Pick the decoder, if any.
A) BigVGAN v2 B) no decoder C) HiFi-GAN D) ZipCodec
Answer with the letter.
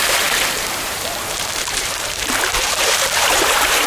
A